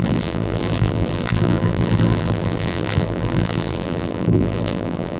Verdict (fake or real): fake